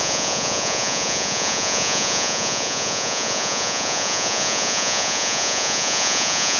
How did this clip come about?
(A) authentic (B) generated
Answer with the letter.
B